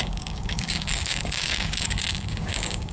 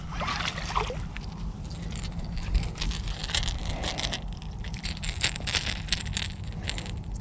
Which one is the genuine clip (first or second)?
second